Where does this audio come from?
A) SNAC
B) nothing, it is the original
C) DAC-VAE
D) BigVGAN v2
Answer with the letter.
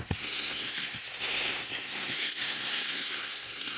A